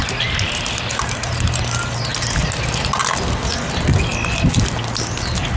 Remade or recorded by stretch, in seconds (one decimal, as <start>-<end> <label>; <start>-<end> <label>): 0.0-0.9 recorded; 0.9-1.6 remade; 1.6-5.6 recorded